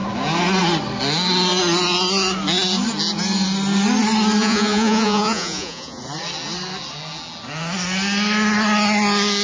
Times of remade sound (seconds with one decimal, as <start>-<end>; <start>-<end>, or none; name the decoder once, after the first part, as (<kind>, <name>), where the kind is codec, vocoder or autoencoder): 4.4-6.0 (vocoder, Vocos)